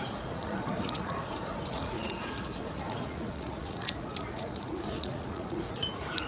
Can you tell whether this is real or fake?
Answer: fake